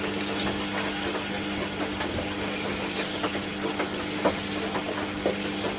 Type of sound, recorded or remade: recorded